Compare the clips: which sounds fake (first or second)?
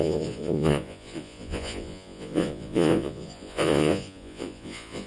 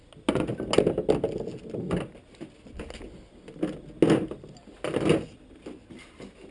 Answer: first